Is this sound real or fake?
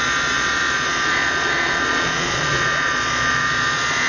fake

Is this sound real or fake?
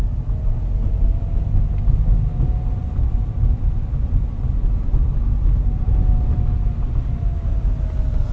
real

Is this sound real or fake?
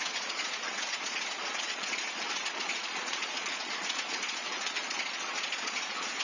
fake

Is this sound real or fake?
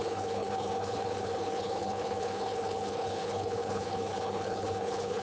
fake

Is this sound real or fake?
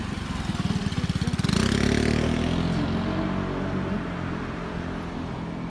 real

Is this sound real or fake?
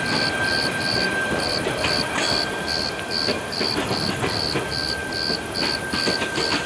real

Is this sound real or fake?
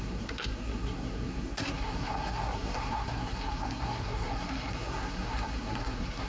fake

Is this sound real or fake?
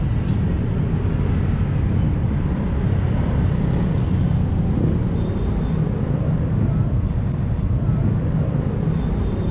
real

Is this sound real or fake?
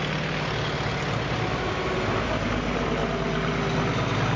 real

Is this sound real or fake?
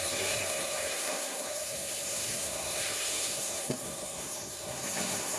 fake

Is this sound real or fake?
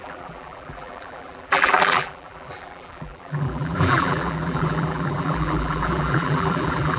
fake